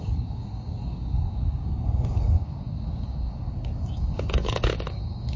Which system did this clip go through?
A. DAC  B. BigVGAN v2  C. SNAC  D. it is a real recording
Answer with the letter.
A